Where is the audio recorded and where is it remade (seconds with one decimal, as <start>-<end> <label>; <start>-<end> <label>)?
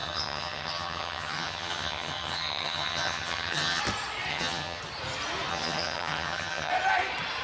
0.0-3.8 remade; 3.8-4.3 recorded; 4.3-4.8 remade; 4.8-5.5 recorded; 5.5-6.7 remade; 6.7-7.4 recorded